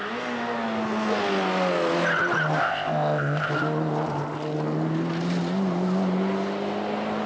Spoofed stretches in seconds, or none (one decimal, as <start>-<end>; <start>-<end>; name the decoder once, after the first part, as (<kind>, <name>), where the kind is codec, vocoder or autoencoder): 2.6-3.5 (codec, ZipCodec)